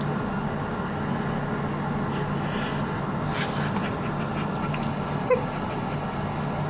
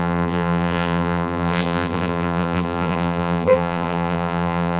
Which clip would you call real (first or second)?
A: first